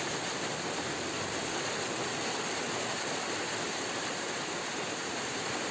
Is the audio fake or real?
real